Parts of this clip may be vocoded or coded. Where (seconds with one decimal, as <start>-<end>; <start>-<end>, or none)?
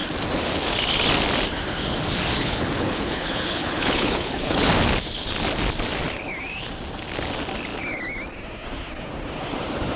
2.4-4.7